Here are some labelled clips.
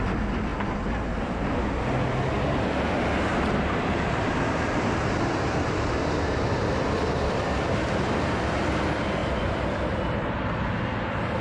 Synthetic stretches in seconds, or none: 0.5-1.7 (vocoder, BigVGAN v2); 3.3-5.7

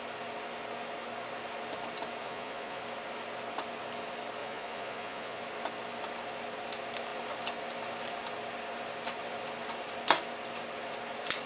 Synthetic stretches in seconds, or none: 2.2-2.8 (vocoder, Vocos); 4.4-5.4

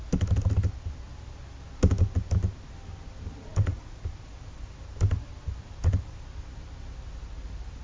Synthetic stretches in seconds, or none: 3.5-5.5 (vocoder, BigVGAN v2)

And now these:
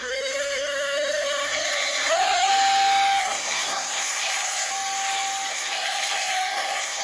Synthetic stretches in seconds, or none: 0.0-2.5 (codec, SNAC); 3.2-4.7; 5.5-7.0